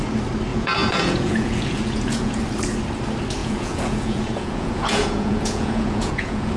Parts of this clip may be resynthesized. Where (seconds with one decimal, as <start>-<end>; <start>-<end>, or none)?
0.5-2.4; 3.4-6.6